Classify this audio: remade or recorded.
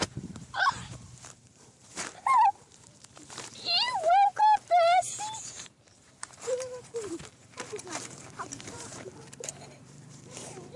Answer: remade